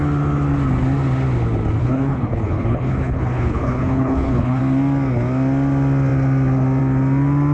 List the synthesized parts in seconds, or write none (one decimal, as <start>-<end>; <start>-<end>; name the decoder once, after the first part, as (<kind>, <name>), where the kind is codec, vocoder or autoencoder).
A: 1.8-4.6 (codec, HILCodec)